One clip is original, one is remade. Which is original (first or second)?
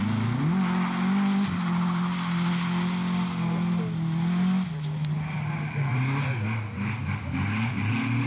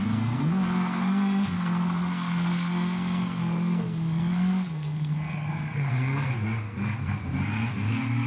first